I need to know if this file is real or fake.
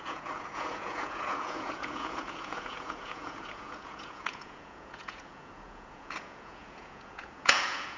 fake